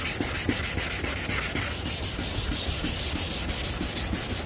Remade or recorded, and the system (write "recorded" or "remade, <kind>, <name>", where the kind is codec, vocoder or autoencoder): recorded